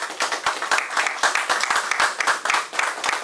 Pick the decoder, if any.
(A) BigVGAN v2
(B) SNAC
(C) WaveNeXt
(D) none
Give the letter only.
D